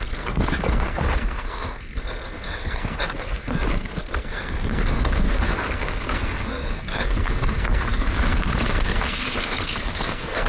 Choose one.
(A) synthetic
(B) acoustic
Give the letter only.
A